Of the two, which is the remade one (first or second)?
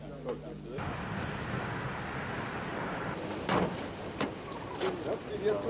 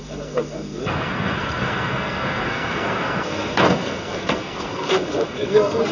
second